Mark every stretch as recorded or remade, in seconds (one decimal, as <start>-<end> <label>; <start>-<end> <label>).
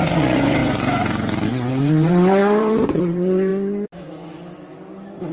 0.0-3.5 remade; 3.5-5.3 recorded